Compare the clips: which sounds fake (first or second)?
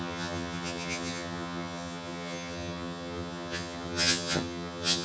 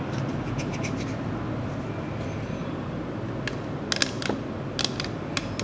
first